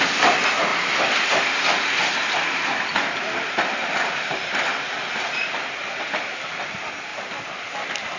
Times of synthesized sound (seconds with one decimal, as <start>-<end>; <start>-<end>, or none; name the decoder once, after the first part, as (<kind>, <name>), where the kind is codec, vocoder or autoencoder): 0.7-4.3 (vocoder, BigVGAN v2)